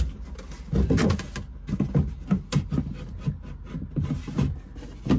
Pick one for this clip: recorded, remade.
recorded